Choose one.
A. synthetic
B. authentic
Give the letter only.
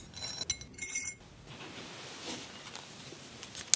B